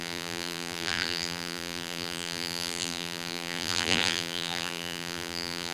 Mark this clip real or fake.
fake